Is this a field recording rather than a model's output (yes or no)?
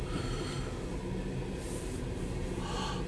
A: yes